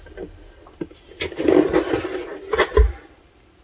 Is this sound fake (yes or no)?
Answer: no